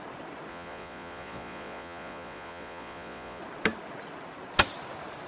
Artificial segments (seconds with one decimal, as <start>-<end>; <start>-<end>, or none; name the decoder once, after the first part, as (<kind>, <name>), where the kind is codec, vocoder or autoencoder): 0.5-3.4 (vocoder, Vocos)